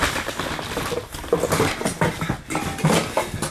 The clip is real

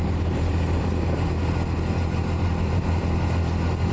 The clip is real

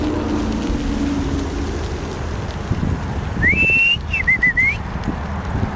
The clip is real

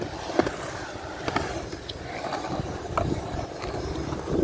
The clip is real